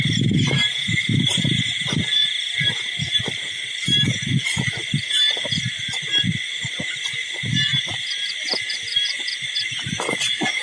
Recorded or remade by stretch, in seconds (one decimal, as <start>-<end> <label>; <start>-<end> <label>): 0.0-10.6 recorded